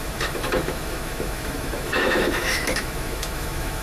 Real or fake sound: fake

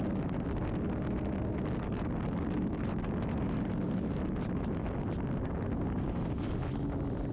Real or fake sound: real